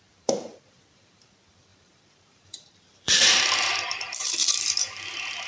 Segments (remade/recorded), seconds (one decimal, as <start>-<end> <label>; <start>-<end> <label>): 0.0-5.5 remade

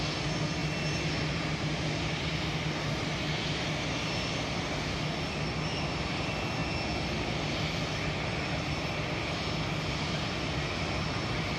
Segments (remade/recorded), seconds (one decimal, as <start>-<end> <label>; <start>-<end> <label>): 0.0-11.6 recorded

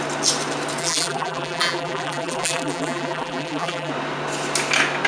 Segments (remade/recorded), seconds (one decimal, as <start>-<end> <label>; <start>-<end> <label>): 0.0-0.8 recorded; 0.8-3.9 remade; 3.9-5.1 recorded

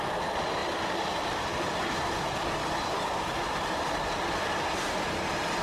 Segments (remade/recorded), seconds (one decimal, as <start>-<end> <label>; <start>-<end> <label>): 0.0-0.6 recorded; 0.6-2.4 remade; 2.4-5.6 recorded

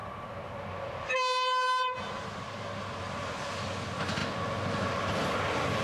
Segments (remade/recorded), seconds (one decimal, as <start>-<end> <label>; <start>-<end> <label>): 0.0-5.8 recorded

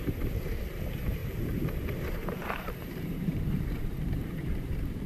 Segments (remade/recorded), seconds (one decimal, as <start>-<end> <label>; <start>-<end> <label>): 0.0-5.1 remade